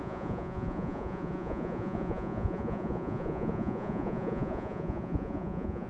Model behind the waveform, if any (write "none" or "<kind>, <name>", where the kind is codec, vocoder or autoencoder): vocoder, Vocos